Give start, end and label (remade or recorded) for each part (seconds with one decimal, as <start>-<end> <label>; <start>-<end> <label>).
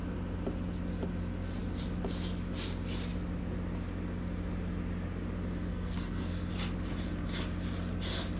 0.0-5.7 recorded; 5.7-6.5 remade; 6.5-8.4 recorded